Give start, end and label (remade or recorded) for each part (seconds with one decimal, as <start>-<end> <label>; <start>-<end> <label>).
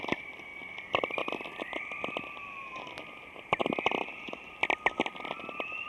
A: 0.0-0.5 remade; 0.5-2.8 recorded; 2.8-3.6 remade; 3.6-4.2 recorded; 4.2-5.9 remade